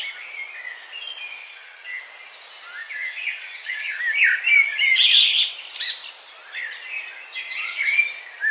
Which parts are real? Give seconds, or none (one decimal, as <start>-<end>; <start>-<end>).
0.0-1.4; 2.0-2.8; 4.0-8.5